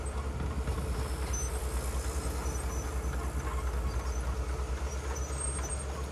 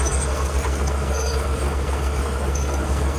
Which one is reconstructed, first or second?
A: second